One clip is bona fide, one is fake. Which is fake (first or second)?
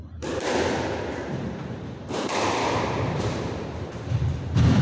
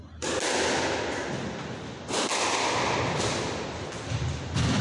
first